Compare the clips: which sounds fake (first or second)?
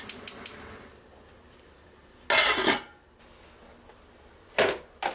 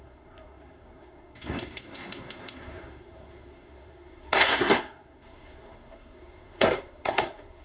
second